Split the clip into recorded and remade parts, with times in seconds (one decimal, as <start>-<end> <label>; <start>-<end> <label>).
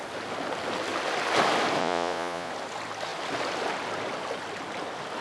0.0-1.8 recorded; 1.8-2.5 remade; 2.5-5.2 recorded